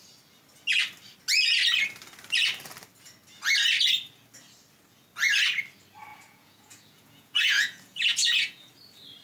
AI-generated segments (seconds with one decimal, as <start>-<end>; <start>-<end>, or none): 6.1-8.7